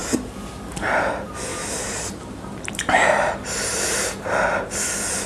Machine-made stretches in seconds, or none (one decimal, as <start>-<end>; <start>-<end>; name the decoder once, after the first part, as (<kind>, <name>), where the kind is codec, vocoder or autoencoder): 1.5-4.7 (vocoder, BigVGAN v2)